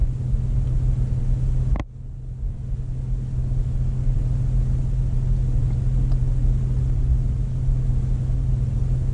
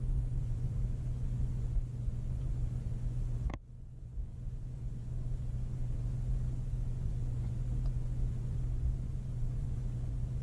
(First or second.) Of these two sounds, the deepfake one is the second